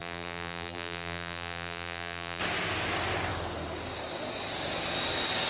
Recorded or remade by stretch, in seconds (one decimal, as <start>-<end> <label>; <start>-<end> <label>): 0.0-2.4 remade; 2.4-5.5 recorded